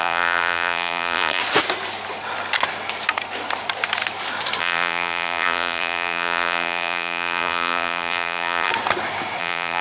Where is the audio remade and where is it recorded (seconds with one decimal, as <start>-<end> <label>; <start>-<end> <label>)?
0.0-1.4 remade; 1.4-4.6 recorded; 4.6-8.7 remade; 8.7-9.4 recorded; 9.4-9.8 remade

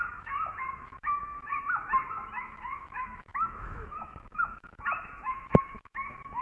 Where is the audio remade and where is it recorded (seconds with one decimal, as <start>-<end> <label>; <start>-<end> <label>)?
0.0-6.4 remade

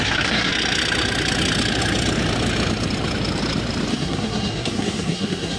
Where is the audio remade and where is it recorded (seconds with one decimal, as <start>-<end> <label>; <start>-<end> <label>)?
0.0-0.5 remade; 0.5-3.9 recorded; 3.9-5.6 remade

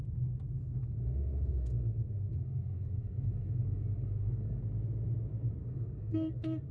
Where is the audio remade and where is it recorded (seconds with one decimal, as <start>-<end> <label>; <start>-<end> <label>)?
0.0-0.6 recorded; 0.6-4.6 remade; 4.6-5.6 recorded; 5.6-6.7 remade

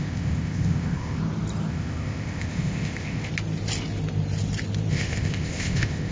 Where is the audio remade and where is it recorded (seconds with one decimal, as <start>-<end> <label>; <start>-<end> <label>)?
0.0-1.2 remade; 1.2-1.7 recorded; 1.7-3.3 remade; 3.3-4.9 recorded; 4.9-6.1 remade

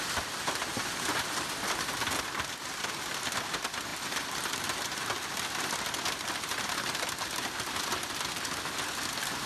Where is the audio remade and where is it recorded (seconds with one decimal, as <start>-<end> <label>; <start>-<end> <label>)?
0.0-9.5 recorded

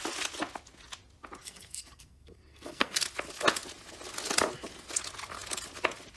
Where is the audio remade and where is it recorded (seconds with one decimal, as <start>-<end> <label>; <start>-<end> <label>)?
0.0-1.4 recorded; 1.4-3.0 remade; 3.0-6.2 recorded